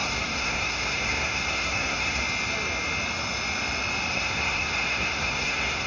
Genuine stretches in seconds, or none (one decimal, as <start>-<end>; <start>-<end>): 2.2-4.1